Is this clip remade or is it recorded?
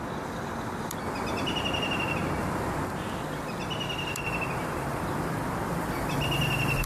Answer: recorded